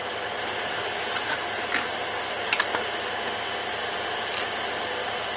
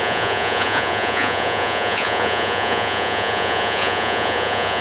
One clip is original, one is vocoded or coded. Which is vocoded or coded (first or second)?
second